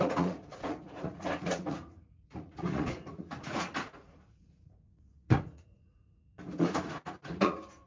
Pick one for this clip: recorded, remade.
remade